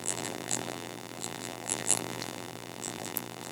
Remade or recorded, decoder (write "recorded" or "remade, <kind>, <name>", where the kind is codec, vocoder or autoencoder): remade, vocoder, BigVGAN v2